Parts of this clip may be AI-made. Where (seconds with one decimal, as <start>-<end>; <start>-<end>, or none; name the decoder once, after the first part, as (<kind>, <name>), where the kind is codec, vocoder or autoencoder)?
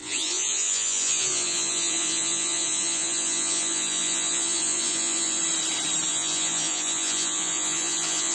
0.0-5.4 (vocoder, Vocos); 6.1-8.3